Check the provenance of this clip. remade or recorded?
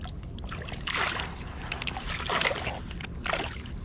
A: recorded